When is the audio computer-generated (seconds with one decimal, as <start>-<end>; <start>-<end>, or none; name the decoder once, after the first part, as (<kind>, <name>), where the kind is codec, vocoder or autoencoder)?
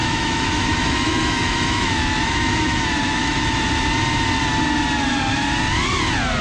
0.0-3.4 (autoencoder, DAC-VAE)